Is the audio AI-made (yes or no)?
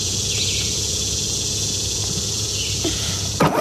yes